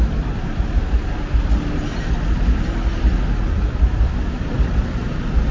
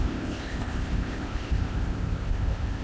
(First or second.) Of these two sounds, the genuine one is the first